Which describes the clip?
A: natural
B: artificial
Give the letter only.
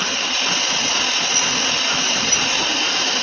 A